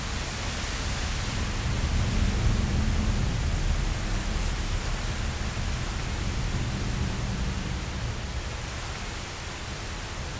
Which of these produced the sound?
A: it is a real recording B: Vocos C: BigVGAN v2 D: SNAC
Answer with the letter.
A